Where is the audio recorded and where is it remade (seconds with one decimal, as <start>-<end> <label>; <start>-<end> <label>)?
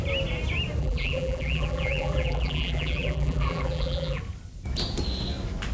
0.0-0.8 recorded; 0.8-4.2 remade; 4.2-5.7 recorded